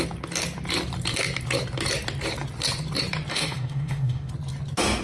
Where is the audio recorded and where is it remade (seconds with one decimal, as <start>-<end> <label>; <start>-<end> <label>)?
0.0-3.3 recorded; 3.3-4.3 remade; 4.3-5.0 recorded